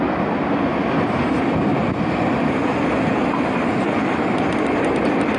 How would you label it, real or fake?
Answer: real